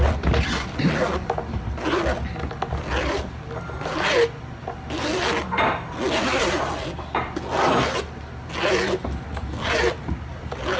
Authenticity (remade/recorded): recorded